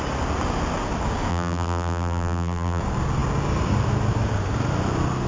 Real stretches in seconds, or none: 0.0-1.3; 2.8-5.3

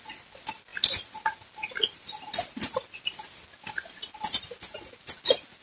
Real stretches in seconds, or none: 0.0-5.6